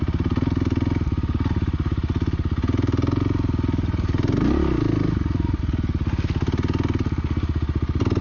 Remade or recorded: recorded